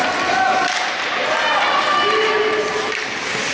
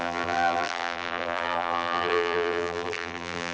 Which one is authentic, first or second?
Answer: first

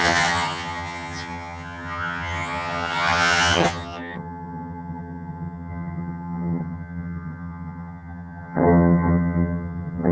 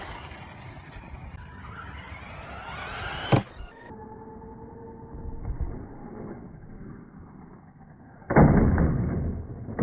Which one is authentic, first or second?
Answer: second